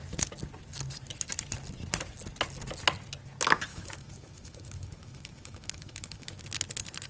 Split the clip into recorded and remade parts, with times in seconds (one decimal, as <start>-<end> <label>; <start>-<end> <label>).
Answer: 0.0-3.7 recorded; 3.7-6.4 remade; 6.4-7.1 recorded